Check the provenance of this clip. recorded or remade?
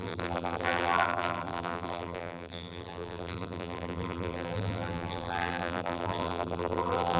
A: remade